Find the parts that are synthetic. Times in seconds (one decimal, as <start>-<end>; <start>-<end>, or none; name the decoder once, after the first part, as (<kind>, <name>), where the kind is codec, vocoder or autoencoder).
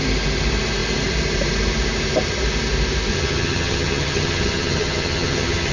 3.1-5.7 (vocoder, HiFi-GAN)